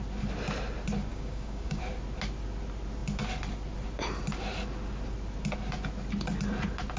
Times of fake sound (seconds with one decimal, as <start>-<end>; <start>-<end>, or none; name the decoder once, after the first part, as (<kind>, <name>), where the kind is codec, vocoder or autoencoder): 1.1-1.8 (codec, DAC)